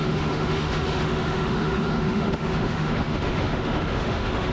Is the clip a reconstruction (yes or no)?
yes